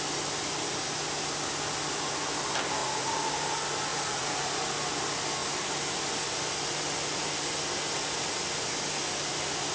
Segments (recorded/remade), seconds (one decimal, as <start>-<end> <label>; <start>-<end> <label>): 0.0-2.8 recorded; 2.8-3.3 remade; 3.3-3.9 recorded; 3.9-4.5 remade; 4.5-9.7 recorded